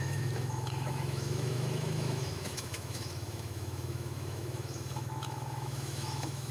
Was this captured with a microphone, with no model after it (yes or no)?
no